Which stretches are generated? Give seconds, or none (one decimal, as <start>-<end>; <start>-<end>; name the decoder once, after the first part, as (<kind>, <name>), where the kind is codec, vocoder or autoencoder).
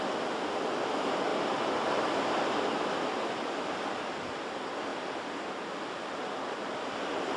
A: none